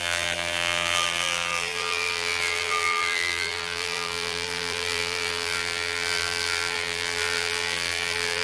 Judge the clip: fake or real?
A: fake